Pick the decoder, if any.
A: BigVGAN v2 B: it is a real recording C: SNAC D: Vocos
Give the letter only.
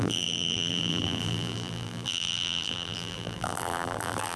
A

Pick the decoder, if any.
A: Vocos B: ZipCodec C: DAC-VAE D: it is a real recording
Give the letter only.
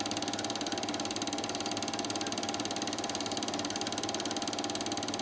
D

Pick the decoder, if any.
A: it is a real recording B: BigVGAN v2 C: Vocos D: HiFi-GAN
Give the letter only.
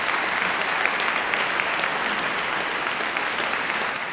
B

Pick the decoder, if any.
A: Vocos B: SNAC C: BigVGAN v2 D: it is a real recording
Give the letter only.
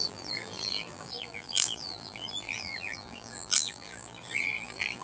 C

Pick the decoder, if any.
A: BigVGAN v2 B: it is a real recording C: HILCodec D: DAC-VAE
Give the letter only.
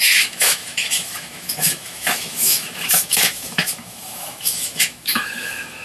D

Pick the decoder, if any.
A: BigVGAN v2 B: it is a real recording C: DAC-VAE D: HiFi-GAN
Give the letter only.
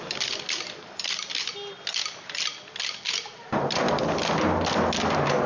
B